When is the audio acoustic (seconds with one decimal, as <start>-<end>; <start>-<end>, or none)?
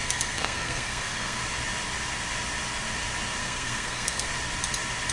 1.4-3.4; 4.3-5.1